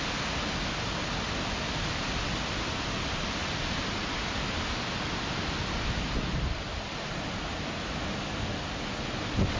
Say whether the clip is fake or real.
real